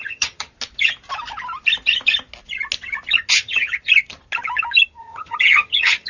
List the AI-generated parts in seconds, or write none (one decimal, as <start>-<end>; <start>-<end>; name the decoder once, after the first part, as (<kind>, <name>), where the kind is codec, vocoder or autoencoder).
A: 0.0-0.5 (vocoder, HiFi-GAN); 3.3-3.7; 5.0-6.1